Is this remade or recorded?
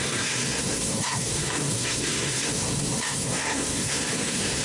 remade